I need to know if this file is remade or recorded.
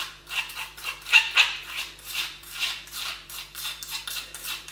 remade